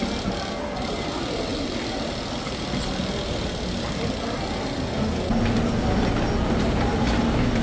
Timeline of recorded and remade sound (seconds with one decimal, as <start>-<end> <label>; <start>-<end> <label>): 0.0-7.6 recorded